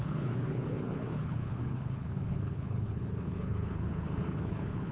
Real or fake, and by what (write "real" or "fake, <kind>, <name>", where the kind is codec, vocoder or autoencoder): fake, codec, HILCodec